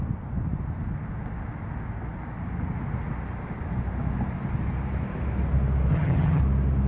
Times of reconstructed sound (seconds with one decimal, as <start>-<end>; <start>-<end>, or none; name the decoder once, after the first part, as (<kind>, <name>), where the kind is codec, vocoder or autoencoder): 5.9-6.4 (vocoder, HiFi-GAN)